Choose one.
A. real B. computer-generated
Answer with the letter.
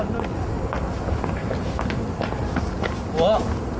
A